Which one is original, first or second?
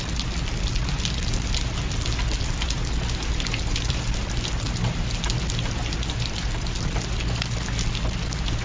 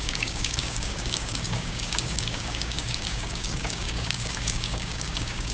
first